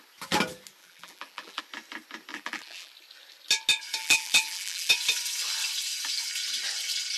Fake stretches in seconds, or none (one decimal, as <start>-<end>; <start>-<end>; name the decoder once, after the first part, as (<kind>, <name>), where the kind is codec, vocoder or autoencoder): 0.8-1.6 (vocoder, BigVGAN v2); 2.3-2.9; 4.0-4.9